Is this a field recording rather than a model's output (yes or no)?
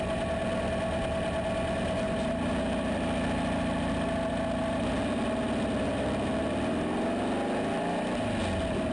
yes